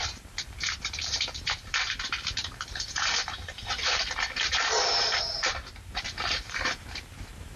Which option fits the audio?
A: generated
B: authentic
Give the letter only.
A